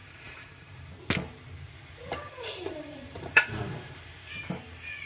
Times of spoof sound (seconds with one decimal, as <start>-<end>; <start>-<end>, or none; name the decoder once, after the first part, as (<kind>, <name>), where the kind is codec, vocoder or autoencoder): 0.0-0.9 (vocoder, BigVGAN v2); 2.1-4.4